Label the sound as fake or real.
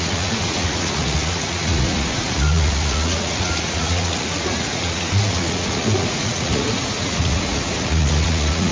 fake